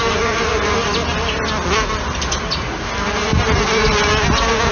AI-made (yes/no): no